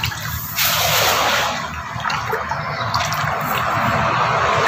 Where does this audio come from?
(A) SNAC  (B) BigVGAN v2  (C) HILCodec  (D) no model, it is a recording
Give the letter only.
D